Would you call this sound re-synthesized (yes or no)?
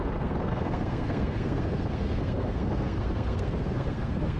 yes